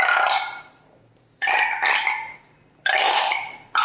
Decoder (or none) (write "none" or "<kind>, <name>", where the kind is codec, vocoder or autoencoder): none